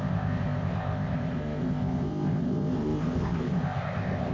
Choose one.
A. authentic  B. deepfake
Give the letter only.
B